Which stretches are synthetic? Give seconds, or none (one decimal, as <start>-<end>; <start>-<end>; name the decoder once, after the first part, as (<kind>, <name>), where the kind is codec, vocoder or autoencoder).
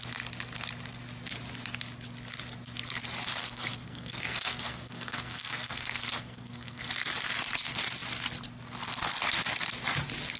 3.4-6.8 (codec, SNAC)